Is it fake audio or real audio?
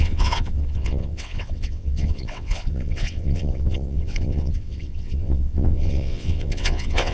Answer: fake